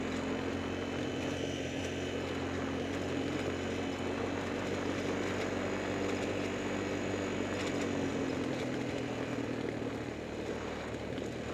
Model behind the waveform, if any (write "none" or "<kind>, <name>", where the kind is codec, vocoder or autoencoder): none